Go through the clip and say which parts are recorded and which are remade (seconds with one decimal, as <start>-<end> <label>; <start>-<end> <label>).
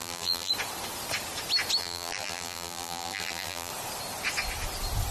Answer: 0.0-0.5 remade; 0.5-1.8 recorded; 1.8-3.7 remade; 3.7-5.1 recorded